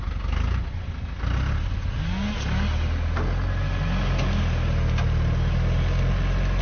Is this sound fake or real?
real